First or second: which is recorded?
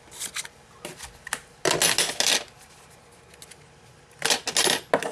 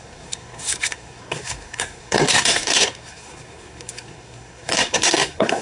first